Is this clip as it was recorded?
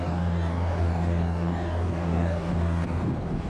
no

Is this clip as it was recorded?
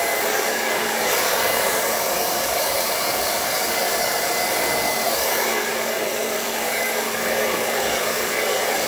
no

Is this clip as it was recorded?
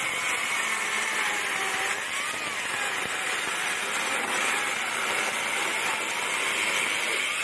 yes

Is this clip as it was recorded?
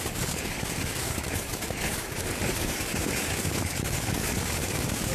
no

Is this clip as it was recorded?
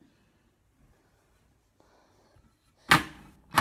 yes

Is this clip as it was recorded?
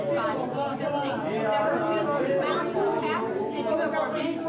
yes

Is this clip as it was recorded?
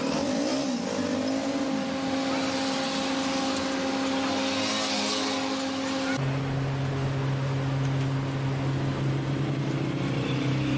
yes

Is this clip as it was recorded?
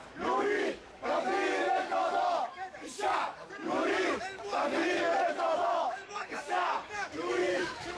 no